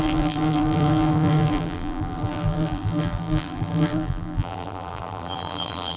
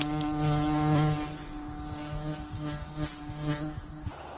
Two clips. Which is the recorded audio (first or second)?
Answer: second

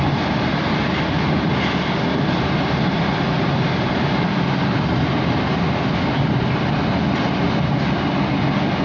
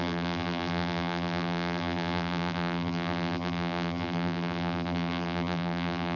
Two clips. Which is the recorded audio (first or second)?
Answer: first